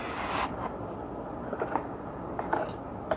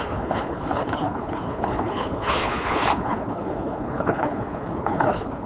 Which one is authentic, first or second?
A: first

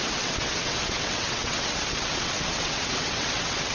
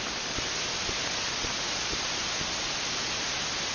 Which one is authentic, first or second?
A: second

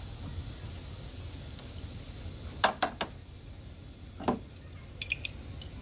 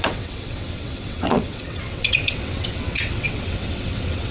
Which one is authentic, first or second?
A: first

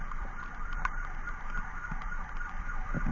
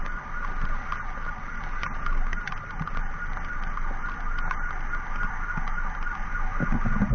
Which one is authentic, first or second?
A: second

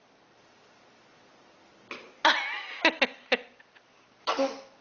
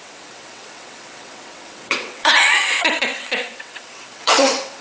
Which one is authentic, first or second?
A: first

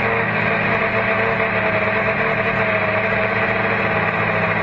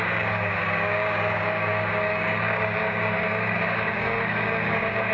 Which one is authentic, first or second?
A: first